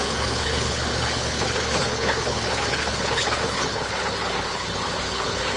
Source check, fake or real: fake